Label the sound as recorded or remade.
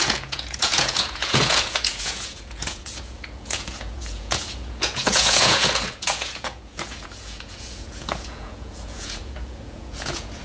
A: remade